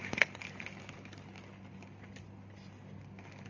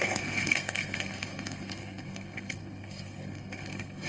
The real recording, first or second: first